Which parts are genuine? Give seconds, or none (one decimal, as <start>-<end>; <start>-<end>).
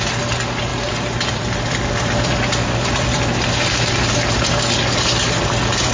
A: 0.0-0.7; 4.1-5.9